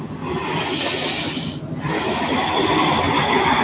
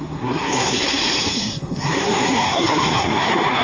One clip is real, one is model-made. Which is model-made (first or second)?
second